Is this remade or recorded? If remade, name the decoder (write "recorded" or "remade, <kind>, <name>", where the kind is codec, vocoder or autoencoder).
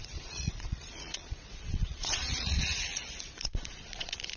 remade, vocoder, Vocos